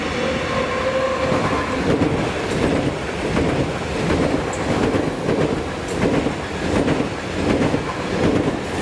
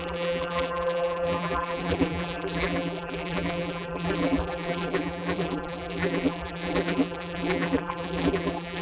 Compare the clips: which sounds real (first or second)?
first